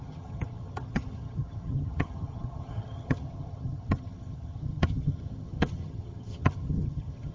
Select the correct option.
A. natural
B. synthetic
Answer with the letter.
B